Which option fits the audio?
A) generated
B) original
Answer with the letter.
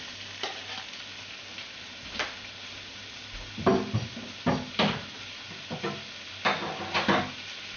B